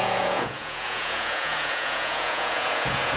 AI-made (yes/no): yes